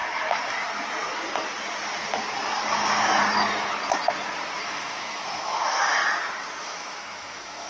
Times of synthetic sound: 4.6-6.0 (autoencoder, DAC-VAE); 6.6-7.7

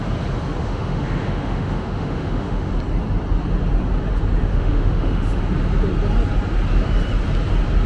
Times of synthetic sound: 0.6-2.7 (autoencoder, DAC-VAE); 4.5-5.4

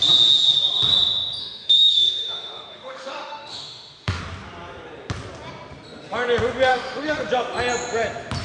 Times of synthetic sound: 1.4-4.2 (autoencoder, DAC-VAE); 6.7-7.3

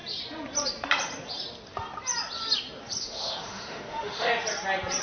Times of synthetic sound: 3.0-4.3 (autoencoder, DAC-VAE)

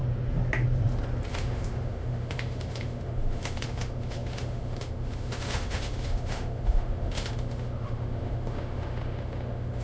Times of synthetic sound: 1.3-9.8 (autoencoder, DAC-VAE)

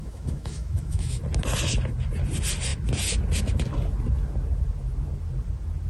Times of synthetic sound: 0.0-1.2 (autoencoder, DAC-VAE)

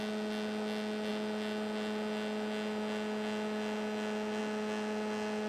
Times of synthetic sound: none

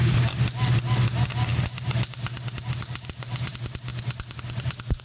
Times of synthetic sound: none